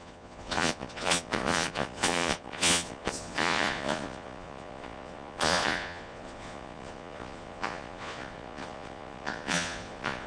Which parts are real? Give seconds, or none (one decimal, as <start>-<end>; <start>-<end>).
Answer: none